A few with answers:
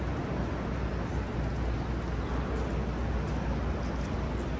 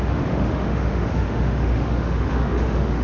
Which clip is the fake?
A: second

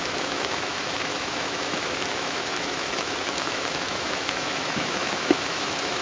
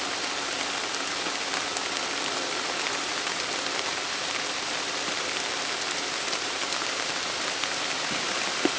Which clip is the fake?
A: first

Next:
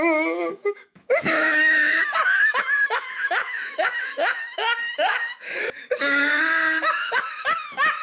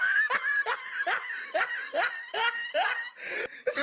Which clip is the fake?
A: first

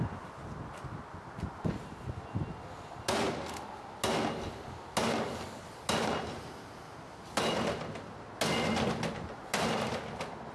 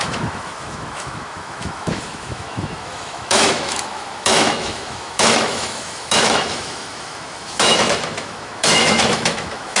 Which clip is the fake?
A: second